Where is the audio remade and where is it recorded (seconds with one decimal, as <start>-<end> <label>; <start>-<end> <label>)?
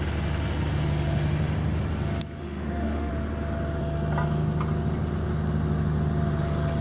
0.0-2.4 recorded; 2.4-3.1 remade; 3.1-6.8 recorded